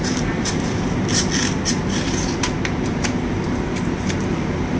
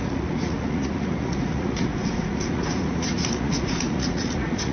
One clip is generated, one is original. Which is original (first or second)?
first